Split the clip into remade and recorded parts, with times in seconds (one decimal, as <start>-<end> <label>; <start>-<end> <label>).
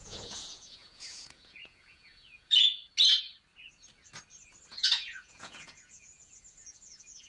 0.0-2.8 remade; 2.8-4.7 recorded; 4.7-7.3 remade